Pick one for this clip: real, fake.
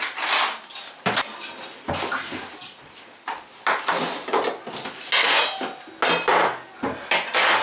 real